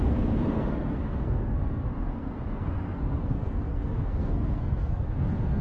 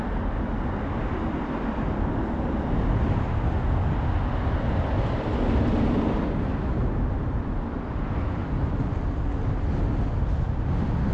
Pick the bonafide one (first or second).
second